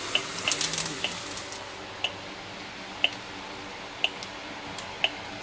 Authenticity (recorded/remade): recorded